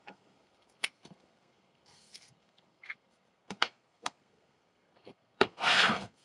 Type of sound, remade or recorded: remade